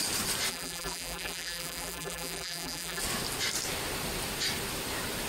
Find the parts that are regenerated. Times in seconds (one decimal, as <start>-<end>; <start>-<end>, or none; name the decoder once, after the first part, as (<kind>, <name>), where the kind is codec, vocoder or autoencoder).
0.5-3.0 (vocoder, BigVGAN v2)